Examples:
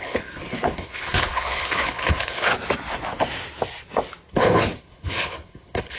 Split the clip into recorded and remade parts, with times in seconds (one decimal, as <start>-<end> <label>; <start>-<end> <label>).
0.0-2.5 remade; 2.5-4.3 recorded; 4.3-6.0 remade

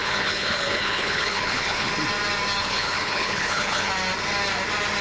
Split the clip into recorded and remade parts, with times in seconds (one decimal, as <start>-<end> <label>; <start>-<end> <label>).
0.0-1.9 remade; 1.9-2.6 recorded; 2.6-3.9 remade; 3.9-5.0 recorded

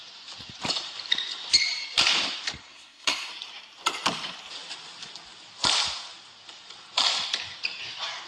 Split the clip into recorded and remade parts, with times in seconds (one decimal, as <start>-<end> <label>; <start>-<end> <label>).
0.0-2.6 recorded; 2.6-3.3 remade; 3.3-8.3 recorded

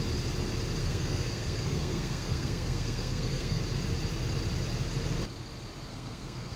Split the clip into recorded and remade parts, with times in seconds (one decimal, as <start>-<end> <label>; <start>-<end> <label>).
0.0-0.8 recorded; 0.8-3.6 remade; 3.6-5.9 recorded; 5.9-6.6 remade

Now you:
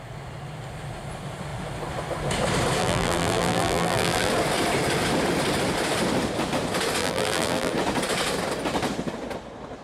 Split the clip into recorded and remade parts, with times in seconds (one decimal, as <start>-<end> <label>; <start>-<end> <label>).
0.0-2.8 recorded; 2.8-4.3 remade; 4.3-7.0 recorded; 7.0-7.7 remade; 7.7-9.8 recorded

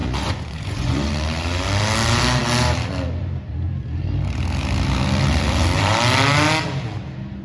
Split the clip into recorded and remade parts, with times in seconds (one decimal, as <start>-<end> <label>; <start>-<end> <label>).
0.0-1.1 remade; 1.1-7.4 recorded

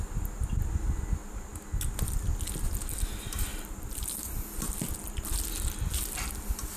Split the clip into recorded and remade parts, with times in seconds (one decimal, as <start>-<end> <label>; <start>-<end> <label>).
0.0-3.5 recorded; 3.5-4.6 remade; 4.6-6.8 recorded